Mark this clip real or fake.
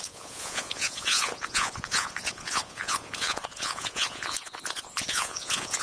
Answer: fake